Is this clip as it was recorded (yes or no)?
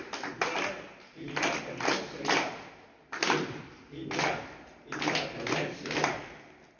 yes